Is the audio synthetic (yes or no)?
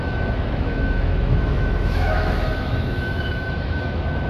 yes